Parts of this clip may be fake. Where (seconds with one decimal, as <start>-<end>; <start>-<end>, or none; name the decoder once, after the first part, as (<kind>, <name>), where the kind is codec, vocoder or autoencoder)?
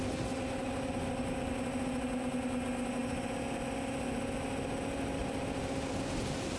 none